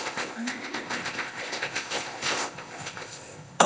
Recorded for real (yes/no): no